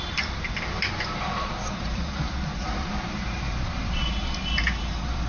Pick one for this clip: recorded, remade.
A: remade